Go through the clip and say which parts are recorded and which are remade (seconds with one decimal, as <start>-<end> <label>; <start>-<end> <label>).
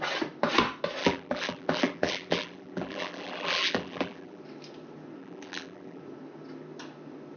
0.0-1.0 recorded; 1.0-4.4 remade; 4.4-5.2 recorded; 5.2-6.0 remade; 6.0-7.4 recorded